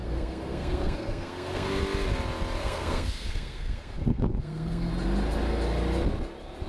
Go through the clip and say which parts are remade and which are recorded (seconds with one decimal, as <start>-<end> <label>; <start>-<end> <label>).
0.0-1.8 remade; 1.8-2.6 recorded; 2.6-4.9 remade; 4.9-6.7 recorded